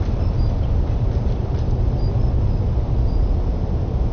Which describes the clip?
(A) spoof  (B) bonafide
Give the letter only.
B